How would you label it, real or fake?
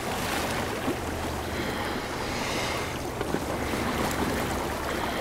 real